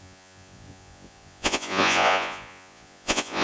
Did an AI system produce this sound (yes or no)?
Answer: yes